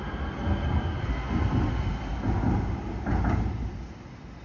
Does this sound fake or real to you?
real